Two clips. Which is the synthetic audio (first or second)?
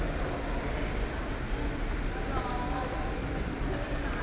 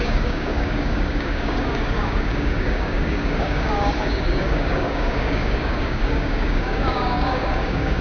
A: second